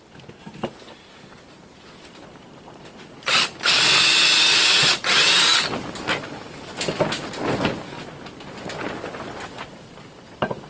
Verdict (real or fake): real